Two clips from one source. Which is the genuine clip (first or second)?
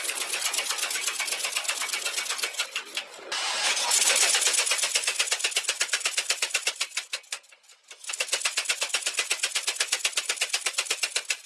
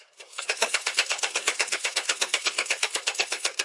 first